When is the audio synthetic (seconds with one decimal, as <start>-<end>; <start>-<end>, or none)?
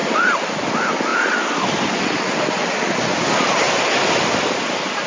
0.0-0.5